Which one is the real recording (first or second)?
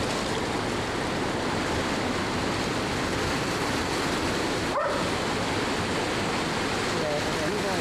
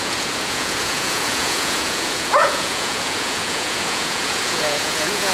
first